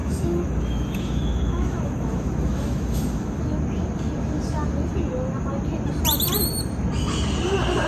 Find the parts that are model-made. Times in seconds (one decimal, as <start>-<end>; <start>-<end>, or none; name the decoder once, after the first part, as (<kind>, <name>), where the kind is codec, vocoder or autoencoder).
0.0-3.4 (autoencoder, DAC-VAE)